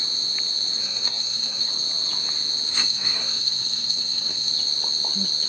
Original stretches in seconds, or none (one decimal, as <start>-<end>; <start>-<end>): 0.0-0.8; 1.7-2.7; 4.5-5.5